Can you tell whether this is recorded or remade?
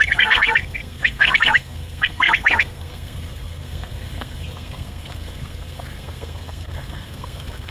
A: remade